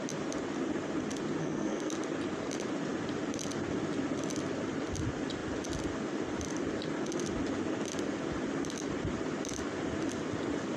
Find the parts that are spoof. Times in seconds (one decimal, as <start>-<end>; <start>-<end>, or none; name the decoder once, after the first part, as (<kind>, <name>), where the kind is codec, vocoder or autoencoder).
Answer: 1.4-1.9 (codec, SNAC)